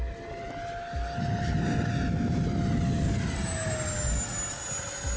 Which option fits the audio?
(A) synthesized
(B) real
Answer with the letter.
B